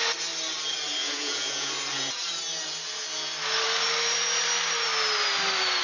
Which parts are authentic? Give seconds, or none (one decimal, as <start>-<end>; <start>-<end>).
0.0-1.0; 1.7-5.8